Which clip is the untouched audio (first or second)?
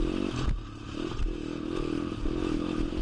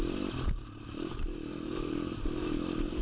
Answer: first